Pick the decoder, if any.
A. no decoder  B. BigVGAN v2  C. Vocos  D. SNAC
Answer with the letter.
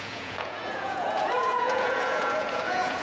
C